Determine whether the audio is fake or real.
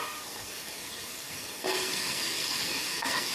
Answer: fake